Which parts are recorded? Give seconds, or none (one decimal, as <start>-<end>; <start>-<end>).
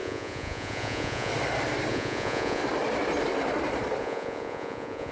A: 1.3-1.9; 2.6-4.0